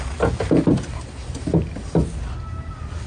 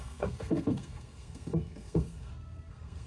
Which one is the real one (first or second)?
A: first